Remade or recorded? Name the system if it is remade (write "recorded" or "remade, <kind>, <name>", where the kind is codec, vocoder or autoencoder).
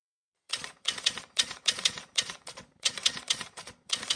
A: remade, vocoder, Vocos